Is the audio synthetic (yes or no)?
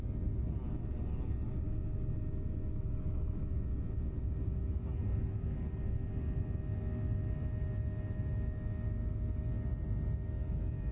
no